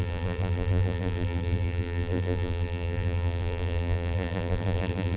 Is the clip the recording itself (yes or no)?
no